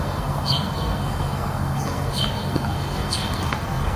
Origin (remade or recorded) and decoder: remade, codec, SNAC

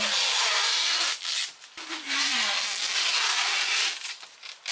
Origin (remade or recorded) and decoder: recorded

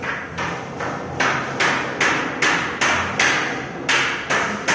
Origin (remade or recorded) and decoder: recorded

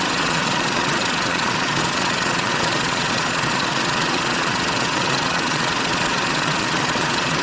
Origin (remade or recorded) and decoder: remade, vocoder, Vocos